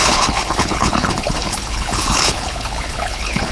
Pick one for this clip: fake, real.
fake